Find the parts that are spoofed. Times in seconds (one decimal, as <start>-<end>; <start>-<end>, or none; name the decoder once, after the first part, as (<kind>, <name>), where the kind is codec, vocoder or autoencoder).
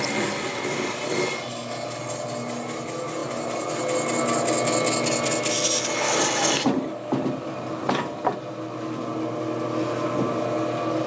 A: none